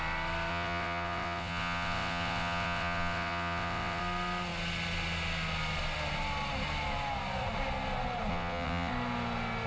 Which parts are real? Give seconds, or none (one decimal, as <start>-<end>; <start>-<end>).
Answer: 0.0-0.5; 4.0-8.3; 8.9-9.7